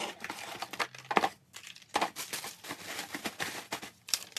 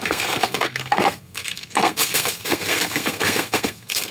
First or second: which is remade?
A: second